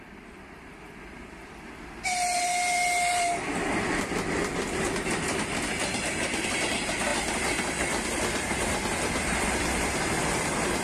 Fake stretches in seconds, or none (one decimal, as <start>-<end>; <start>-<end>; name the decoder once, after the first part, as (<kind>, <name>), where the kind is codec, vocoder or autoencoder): none